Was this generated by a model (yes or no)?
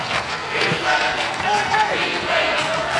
yes